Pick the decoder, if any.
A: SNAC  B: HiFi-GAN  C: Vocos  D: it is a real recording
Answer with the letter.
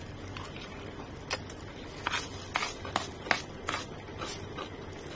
D